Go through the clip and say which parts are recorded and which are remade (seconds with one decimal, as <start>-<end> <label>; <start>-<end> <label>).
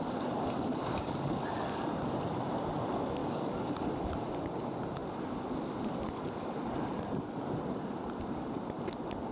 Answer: 0.0-3.2 recorded; 3.2-3.7 remade; 3.7-9.3 recorded